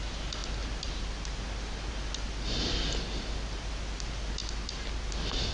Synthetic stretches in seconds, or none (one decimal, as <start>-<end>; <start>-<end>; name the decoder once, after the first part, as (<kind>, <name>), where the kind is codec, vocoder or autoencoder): none